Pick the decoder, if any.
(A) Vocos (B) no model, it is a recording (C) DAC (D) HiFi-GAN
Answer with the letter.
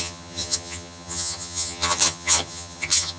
D